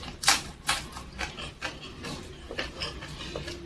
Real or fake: real